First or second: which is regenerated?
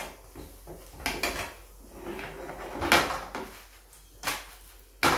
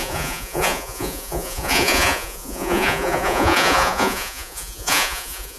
second